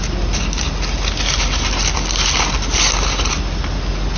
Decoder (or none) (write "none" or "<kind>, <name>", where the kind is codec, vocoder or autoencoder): none